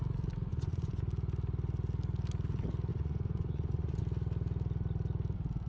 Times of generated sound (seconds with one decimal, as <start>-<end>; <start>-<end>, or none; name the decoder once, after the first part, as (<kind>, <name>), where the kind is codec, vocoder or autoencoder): 0.5-1.0 (vocoder, Vocos); 2.9-4.0